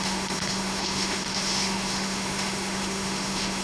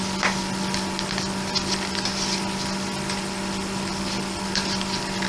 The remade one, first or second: first